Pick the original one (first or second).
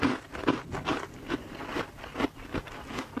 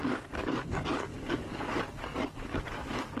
first